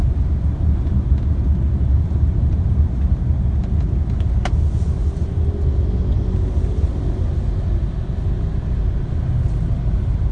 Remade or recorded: recorded